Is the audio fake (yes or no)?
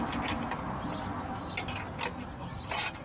no